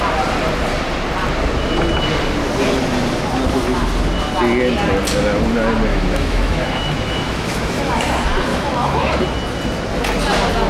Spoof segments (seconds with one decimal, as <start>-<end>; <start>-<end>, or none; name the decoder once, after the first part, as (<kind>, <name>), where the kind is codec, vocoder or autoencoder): 5.9-8.0 (autoencoder, DAC-VAE); 8.5-9.1